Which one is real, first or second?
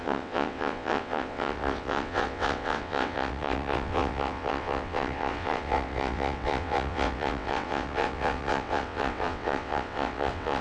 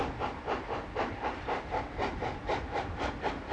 second